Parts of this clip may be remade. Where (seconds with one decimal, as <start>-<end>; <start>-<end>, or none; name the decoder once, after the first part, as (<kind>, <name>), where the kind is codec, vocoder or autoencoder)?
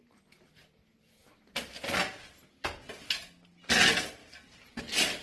none